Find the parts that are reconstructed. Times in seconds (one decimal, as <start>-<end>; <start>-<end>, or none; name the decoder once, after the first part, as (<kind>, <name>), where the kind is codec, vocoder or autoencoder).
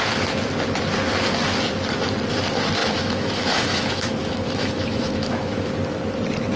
2.8-5.7 (autoencoder, DAC-VAE)